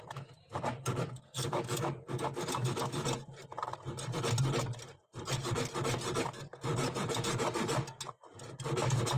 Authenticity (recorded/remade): recorded